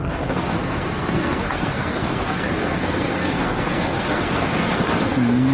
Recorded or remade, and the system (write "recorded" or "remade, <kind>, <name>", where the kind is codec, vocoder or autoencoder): remade, codec, SNAC